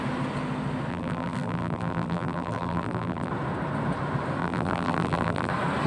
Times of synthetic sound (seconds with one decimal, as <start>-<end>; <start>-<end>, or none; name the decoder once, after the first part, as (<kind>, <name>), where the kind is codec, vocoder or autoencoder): 0.9-3.3 (vocoder, BigVGAN v2); 4.4-5.5